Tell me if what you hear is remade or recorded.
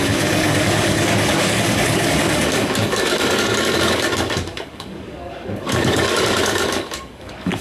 remade